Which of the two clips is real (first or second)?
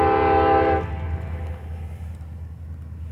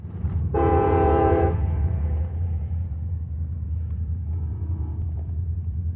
first